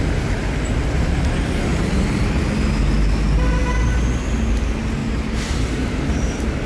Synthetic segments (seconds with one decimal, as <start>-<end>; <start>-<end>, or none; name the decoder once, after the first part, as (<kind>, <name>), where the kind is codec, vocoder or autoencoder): 1.7-2.4 (vocoder, BigVGAN v2); 5.0-6.7